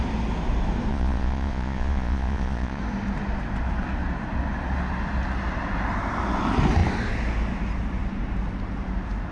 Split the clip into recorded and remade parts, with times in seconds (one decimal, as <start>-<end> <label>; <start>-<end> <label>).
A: 0.0-0.9 recorded; 0.9-2.8 remade; 2.8-9.3 recorded